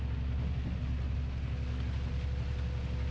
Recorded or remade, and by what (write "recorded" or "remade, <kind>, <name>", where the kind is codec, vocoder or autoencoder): recorded